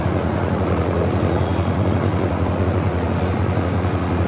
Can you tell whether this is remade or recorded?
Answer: remade